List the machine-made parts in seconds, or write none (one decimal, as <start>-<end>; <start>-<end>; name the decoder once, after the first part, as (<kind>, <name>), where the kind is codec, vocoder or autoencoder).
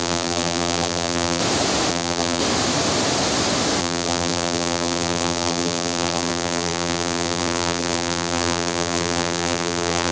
0.0-1.4 (vocoder, BigVGAN v2); 1.9-2.4; 3.8-10.1